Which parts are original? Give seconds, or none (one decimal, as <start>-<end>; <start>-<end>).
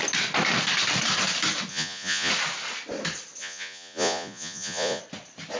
0.0-1.7; 2.3-3.4; 5.0-5.6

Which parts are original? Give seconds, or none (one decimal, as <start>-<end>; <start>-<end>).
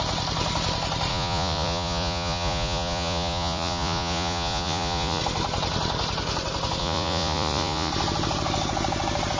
0.0-1.1; 5.2-6.8; 7.9-9.4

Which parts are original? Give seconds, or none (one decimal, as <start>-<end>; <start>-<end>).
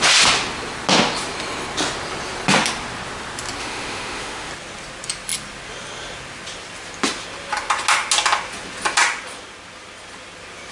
0.0-3.6; 4.5-10.7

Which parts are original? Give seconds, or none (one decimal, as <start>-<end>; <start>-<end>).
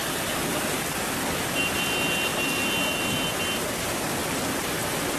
0.0-5.2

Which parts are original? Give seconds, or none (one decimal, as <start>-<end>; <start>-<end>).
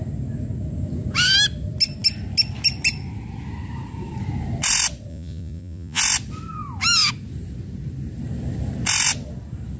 0.0-5.1; 6.0-9.8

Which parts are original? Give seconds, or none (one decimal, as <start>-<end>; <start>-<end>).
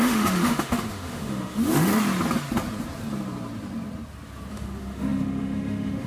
1.9-4.5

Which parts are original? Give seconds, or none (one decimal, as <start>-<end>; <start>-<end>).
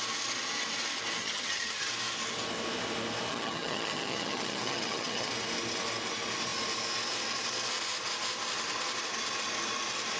0.0-1.2; 1.9-3.3; 5.3-10.2